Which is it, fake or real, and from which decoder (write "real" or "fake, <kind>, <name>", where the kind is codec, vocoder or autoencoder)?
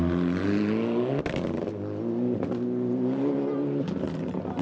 real